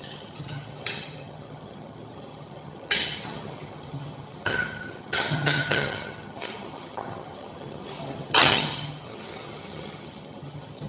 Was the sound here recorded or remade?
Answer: remade